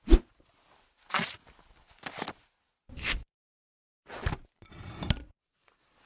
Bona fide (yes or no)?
yes